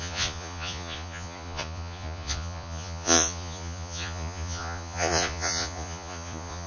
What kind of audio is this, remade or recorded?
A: remade